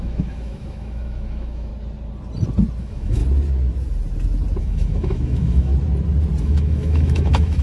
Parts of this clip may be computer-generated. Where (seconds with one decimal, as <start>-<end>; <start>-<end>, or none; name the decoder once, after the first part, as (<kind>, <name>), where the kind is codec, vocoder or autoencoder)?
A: 0.0-1.7 (autoencoder, DAC-VAE); 2.8-3.2; 4.6-5.7; 6.4-7.6